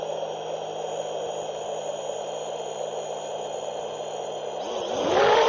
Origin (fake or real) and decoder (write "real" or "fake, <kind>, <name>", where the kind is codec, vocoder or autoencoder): real